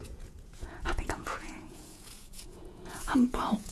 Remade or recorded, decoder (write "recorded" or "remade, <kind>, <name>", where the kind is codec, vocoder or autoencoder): remade, vocoder, Vocos